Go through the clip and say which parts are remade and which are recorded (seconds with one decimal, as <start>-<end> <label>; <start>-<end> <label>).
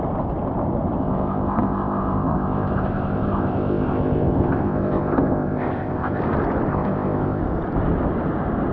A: 0.0-1.0 recorded; 1.0-6.2 remade; 6.2-6.7 recorded; 6.7-7.4 remade; 7.4-8.7 recorded